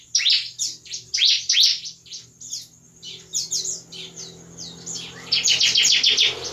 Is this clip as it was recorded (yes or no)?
yes